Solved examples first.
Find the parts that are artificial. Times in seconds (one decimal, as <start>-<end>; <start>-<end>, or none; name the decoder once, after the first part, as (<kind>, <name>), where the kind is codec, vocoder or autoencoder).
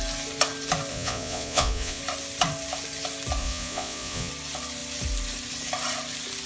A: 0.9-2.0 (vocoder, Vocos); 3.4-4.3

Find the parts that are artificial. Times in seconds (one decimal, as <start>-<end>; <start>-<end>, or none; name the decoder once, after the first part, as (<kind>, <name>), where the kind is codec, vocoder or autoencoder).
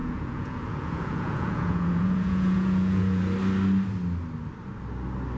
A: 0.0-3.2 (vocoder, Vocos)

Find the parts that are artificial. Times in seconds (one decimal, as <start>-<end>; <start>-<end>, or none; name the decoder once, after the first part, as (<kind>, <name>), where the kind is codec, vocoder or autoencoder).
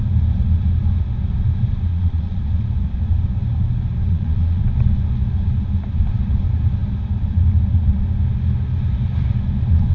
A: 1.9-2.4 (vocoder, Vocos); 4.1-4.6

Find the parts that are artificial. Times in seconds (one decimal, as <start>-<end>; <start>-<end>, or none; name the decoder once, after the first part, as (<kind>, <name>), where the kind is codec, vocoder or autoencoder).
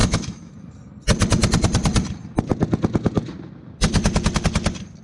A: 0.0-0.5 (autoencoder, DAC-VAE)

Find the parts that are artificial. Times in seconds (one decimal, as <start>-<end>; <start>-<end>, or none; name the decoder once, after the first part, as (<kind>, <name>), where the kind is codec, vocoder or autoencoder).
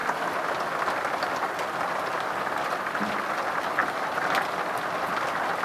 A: none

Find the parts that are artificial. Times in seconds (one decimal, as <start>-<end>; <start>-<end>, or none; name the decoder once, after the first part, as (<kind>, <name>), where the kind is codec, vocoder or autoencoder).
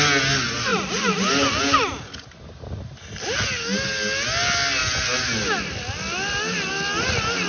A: none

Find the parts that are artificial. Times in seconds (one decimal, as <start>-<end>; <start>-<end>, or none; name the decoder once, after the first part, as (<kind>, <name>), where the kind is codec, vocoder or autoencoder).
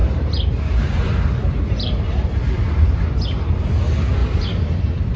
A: 0.0-3.1 (vocoder, BigVGAN v2); 4.2-5.2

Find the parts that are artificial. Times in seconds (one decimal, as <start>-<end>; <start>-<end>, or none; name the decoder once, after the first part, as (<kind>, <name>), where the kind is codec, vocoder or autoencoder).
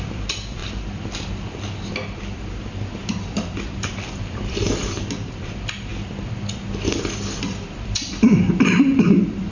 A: 0.0-5.9 (vocoder, BigVGAN v2); 7.0-9.5